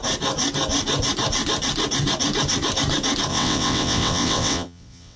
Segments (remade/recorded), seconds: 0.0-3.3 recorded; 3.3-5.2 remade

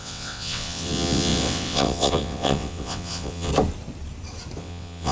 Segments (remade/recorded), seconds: 0.0-3.5 remade; 3.5-4.6 recorded; 4.6-5.1 remade

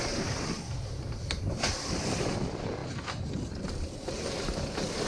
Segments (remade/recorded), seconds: 0.0-5.1 recorded

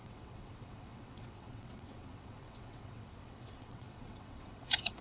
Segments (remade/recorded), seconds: 0.0-5.0 remade

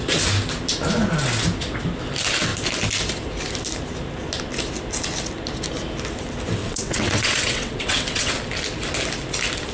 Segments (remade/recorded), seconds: 0.0-6.6 recorded; 6.6-8.3 remade; 8.3-9.7 recorded